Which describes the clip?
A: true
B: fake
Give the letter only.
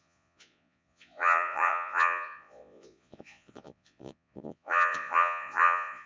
B